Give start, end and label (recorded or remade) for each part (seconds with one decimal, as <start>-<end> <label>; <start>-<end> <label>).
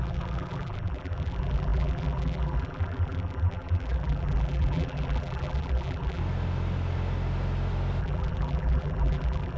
0.0-6.2 remade; 6.2-8.0 recorded; 8.0-9.6 remade